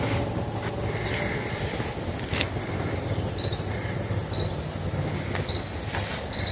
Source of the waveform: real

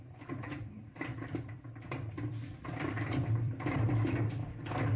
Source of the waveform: fake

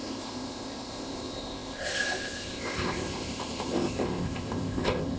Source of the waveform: fake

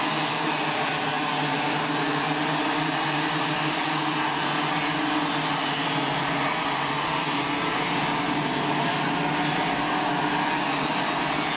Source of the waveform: real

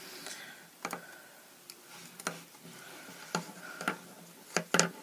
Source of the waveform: real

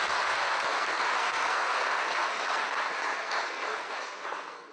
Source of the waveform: fake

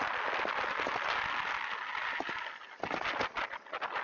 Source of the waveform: real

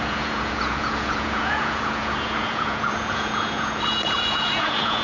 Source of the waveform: fake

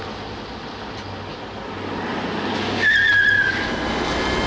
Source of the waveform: real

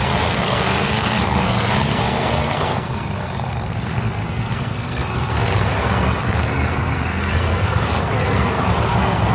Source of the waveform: fake